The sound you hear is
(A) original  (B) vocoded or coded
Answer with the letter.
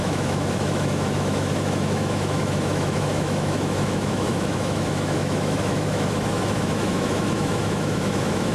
B